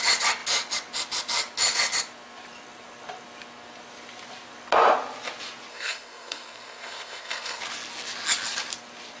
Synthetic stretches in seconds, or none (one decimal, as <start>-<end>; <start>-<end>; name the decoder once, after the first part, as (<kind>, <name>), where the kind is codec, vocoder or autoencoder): 5.7-7.6 (codec, SNAC)